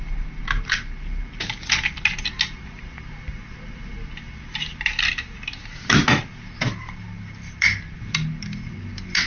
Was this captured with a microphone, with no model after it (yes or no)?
yes